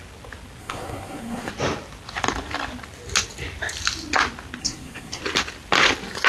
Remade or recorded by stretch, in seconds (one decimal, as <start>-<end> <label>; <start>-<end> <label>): 0.0-0.6 recorded; 0.6-1.5 remade; 1.5-4.6 recorded; 4.6-5.2 remade; 5.2-6.3 recorded